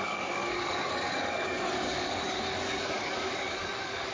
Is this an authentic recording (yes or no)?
no